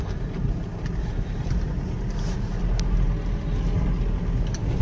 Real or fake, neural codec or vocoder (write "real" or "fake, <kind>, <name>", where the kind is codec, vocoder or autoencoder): real